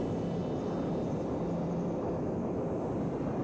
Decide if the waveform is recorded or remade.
recorded